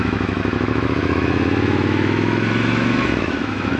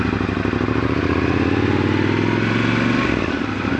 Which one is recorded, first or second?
second